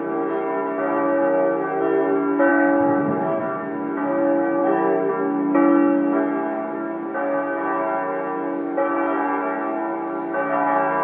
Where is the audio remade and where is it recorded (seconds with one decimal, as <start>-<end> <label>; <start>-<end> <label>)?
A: 0.0-2.5 recorded; 2.5-3.4 remade; 3.4-4.6 recorded; 4.6-5.1 remade; 5.1-11.0 recorded